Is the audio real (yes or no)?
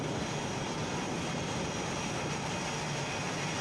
yes